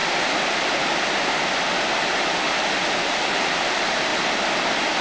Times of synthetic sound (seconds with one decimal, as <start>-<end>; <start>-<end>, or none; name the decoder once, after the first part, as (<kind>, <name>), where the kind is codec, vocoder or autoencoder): 3.0-4.1 (vocoder, BigVGAN v2)

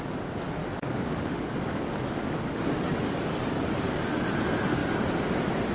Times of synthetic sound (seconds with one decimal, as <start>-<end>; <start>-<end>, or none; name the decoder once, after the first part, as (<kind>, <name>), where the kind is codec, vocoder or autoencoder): 0.6-4.0 (codec, DAC)

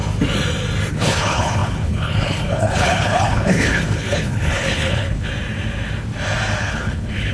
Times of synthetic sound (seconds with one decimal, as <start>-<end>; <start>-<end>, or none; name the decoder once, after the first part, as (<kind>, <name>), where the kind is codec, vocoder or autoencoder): 0.9-5.3 (codec, HILCodec); 6.6-7.3

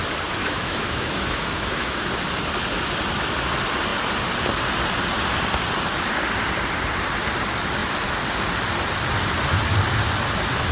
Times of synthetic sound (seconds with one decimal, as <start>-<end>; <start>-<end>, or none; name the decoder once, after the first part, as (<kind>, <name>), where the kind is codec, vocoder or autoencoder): 0.4-2.1 (autoencoder, DAC-VAE)

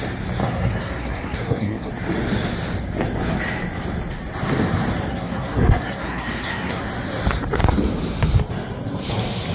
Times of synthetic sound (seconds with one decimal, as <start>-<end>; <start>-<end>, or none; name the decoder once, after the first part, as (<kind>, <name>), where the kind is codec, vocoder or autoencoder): 0.4-1.9 (codec, SNAC); 5.1-6.8

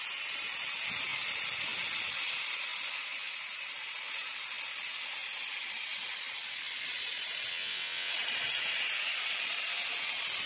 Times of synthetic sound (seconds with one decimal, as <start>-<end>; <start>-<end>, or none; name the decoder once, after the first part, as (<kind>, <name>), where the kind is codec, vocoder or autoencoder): 7.5-8.1 (vocoder, WaveNeXt)